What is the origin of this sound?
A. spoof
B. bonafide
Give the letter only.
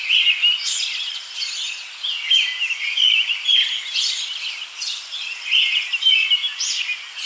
B